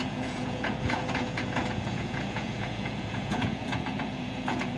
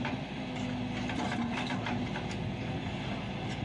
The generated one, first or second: first